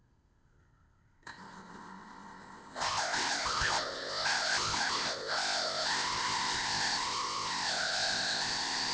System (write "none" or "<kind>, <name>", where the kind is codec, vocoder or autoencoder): codec, ZipCodec